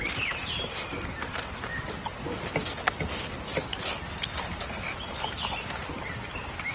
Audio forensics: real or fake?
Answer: real